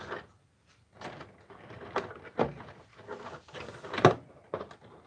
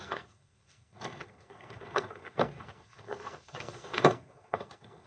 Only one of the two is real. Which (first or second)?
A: first